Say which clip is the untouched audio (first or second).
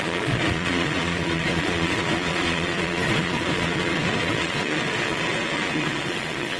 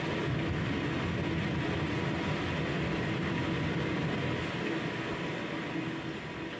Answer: second